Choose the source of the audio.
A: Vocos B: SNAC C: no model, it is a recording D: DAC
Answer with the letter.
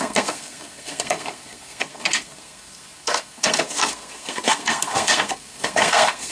B